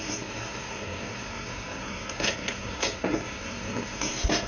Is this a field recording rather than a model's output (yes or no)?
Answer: no